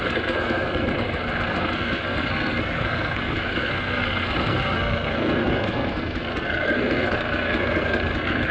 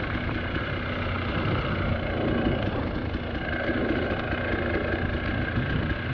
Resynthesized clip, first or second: first